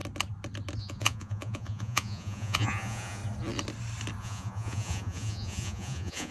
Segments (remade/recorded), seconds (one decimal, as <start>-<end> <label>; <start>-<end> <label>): 0.0-0.8 recorded; 0.8-3.2 remade; 3.2-4.2 recorded; 4.2-6.3 remade